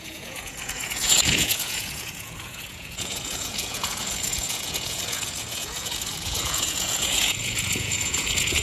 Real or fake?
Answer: fake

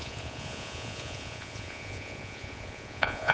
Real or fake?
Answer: fake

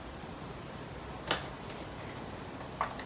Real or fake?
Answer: real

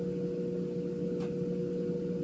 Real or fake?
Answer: real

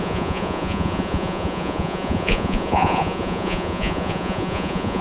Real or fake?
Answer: fake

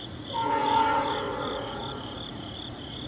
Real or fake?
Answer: fake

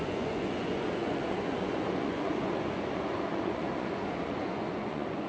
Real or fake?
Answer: fake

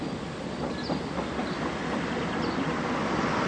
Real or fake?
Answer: real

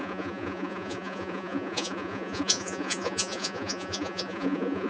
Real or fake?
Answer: fake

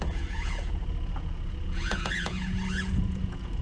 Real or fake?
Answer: fake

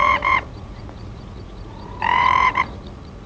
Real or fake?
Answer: fake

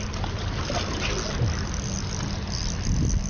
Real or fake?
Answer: real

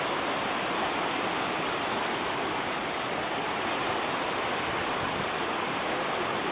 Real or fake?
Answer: real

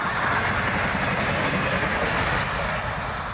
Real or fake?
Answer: real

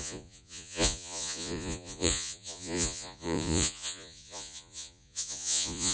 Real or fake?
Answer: fake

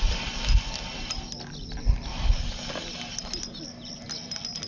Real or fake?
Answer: real